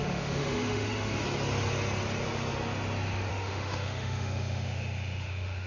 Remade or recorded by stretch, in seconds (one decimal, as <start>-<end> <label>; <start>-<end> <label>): 0.0-1.2 remade; 1.2-3.3 recorded; 3.3-5.7 remade